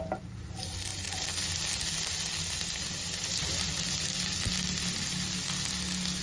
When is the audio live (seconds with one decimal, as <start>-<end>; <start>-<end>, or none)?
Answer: 0.0-6.2